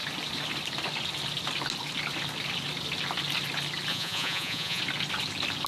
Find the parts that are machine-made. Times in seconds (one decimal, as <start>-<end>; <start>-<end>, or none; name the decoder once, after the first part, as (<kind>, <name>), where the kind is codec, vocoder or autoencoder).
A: 3.9-4.8 (vocoder, Vocos)